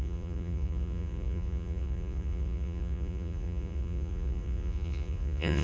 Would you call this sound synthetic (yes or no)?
yes